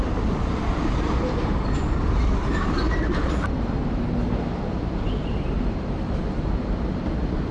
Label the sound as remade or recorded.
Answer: remade